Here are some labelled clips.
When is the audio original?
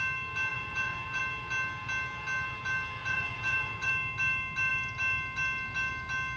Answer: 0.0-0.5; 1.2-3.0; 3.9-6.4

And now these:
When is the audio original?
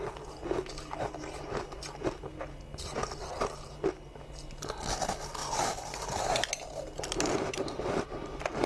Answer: 0.0-5.4; 8.0-8.7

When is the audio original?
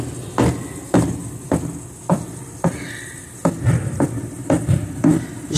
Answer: 0.0-2.1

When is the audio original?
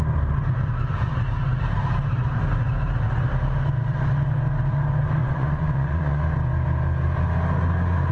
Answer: 0.0-5.2; 6.2-8.1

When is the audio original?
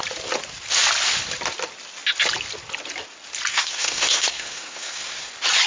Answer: 0.0-3.5; 5.3-5.7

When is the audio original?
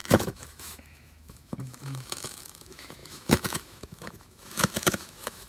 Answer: none